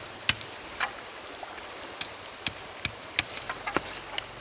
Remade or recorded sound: recorded